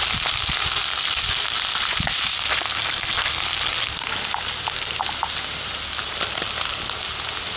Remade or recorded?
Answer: recorded